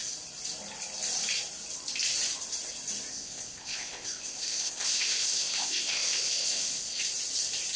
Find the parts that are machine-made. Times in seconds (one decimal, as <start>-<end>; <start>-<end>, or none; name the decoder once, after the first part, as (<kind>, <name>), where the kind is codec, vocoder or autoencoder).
3.1-7.0 (codec, ZipCodec)